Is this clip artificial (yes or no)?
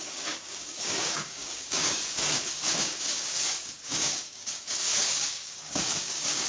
yes